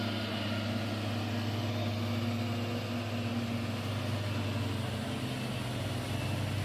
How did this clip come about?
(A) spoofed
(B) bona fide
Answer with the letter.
B